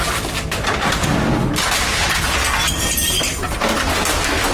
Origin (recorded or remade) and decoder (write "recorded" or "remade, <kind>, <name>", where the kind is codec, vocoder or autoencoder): recorded